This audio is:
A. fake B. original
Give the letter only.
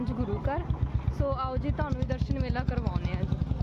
B